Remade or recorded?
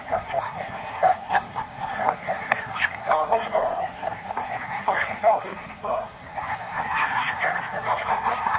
remade